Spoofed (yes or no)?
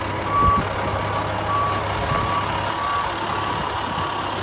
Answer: no